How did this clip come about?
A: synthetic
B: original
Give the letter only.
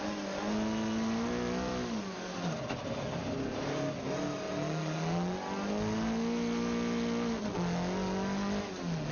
B